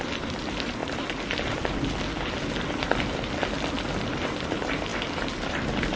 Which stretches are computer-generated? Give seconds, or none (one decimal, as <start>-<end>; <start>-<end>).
0.0-0.8; 4.4-4.9; 5.5-6.0